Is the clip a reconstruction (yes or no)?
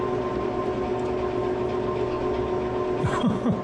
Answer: no